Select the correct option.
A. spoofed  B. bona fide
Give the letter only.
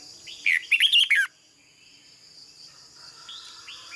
B